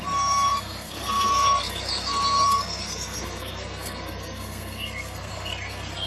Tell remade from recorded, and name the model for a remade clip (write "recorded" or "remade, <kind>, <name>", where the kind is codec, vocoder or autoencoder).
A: remade, codec, SNAC